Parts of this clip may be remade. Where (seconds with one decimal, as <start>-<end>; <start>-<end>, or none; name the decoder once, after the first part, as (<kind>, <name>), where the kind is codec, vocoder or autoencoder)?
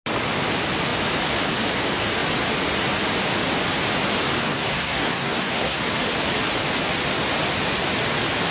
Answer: 4.4-5.8 (codec, SNAC)